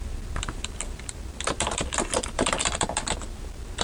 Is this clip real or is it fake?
fake